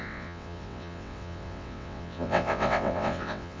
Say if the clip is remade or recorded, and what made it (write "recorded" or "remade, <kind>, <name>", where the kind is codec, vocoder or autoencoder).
remade, vocoder, WaveNeXt